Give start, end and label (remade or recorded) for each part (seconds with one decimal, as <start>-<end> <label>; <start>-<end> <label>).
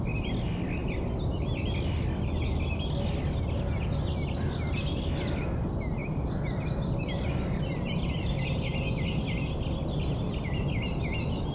0.0-6.0 recorded; 6.0-8.4 remade; 8.4-11.5 recorded